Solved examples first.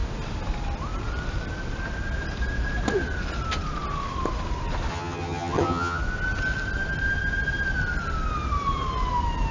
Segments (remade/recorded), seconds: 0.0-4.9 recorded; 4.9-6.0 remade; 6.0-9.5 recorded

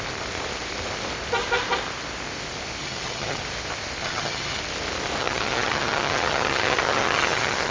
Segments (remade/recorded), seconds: 0.0-2.8 recorded; 2.8-3.4 remade; 3.4-4.0 recorded; 4.0-4.6 remade; 4.6-5.2 recorded; 5.2-7.7 remade

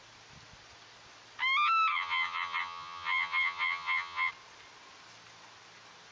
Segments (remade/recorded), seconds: 0.0-1.9 recorded; 1.9-4.3 remade; 4.3-6.1 recorded

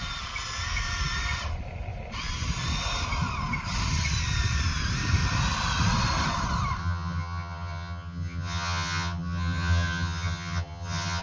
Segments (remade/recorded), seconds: 0.0-6.8 recorded; 6.8-11.2 remade